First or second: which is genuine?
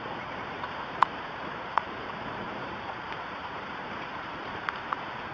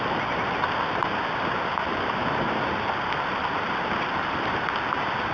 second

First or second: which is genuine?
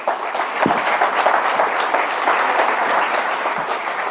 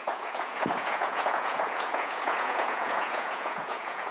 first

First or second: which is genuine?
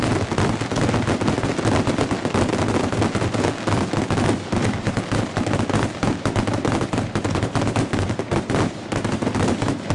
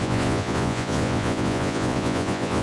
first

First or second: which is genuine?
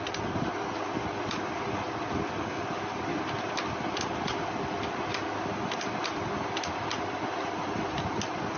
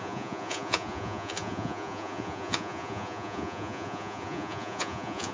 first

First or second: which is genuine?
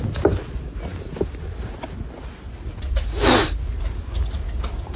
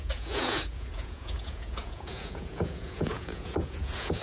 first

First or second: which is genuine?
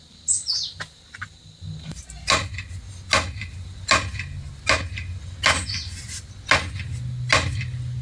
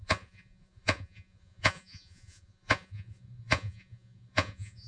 first